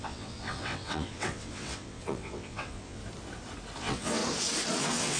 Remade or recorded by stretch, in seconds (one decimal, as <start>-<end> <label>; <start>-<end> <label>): 0.0-3.0 remade; 3.0-3.8 recorded; 3.8-4.2 remade; 4.2-4.8 recorded; 4.8-5.2 remade

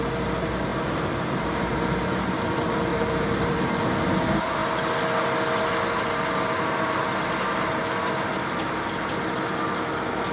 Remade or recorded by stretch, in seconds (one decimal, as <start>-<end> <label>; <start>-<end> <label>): 0.0-0.7 recorded; 0.7-2.2 remade; 2.2-2.9 recorded; 2.9-3.7 remade; 3.7-10.3 recorded

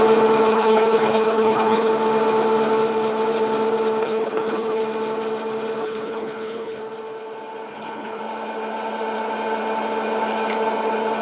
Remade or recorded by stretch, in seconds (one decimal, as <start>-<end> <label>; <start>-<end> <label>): 0.0-0.5 recorded; 0.5-1.9 remade; 1.9-4.0 recorded; 4.0-4.8 remade; 4.8-5.8 recorded; 5.8-6.8 remade; 6.8-7.7 recorded; 7.7-8.2 remade; 8.2-11.2 recorded

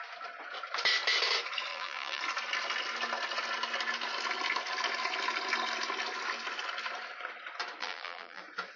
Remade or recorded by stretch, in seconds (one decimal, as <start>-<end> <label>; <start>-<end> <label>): 0.0-1.7 recorded; 1.7-2.2 remade; 2.2-7.8 recorded; 7.8-8.4 remade; 8.4-8.8 recorded

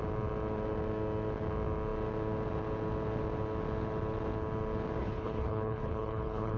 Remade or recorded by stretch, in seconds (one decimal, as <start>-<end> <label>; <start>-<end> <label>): 0.0-5.0 recorded; 5.0-6.6 remade

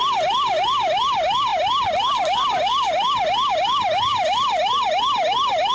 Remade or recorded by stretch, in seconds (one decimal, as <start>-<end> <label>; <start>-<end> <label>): 0.0-5.7 recorded

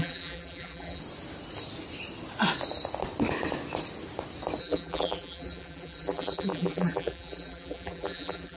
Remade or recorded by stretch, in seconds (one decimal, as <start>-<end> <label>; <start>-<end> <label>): 0.0-1.0 remade; 1.0-4.6 recorded; 4.6-8.6 remade